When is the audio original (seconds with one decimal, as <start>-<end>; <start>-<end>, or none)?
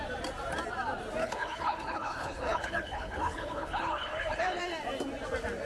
0.0-1.2; 4.6-5.6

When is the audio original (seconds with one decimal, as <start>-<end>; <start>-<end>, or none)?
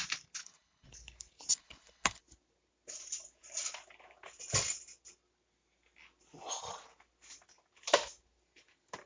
0.0-0.4; 0.9-1.5; 2.2-9.1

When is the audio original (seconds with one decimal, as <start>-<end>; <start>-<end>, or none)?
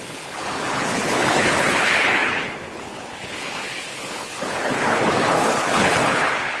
none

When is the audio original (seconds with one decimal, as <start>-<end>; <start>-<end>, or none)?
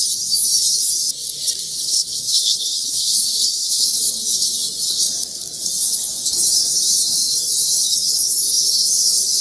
0.0-1.7; 3.1-3.5; 4.0-9.4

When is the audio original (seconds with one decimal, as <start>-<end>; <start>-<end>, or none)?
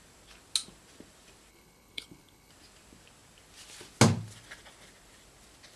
0.0-1.5; 2.5-5.8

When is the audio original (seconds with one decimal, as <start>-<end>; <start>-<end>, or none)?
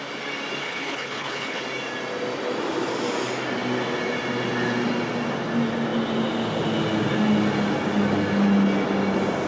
0.0-0.6; 1.6-9.5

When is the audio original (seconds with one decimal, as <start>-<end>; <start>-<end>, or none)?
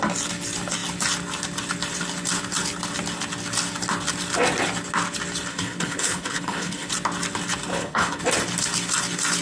0.0-5.5; 6.9-7.7; 8.2-9.4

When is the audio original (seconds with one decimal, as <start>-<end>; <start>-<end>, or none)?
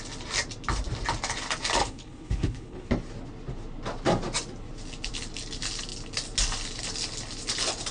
0.0-1.8; 2.9-7.9